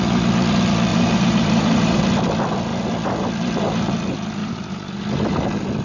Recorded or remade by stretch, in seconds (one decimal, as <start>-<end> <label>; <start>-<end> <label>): 0.0-0.9 recorded; 0.9-2.0 remade; 2.0-4.4 recorded; 4.4-5.0 remade; 5.0-5.8 recorded